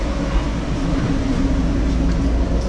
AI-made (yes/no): no